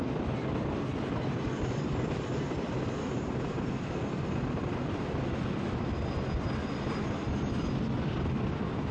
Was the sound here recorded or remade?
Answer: recorded